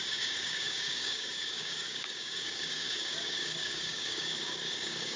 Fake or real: fake